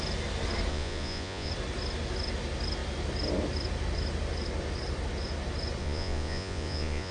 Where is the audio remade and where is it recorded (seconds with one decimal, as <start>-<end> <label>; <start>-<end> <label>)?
0.0-0.7 recorded; 0.7-1.5 remade; 1.5-5.8 recorded; 5.8-7.1 remade